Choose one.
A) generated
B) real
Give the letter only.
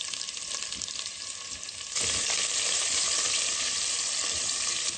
A